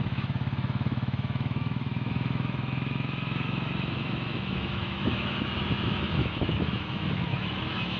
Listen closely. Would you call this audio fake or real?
fake